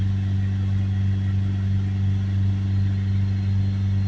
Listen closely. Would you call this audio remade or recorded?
recorded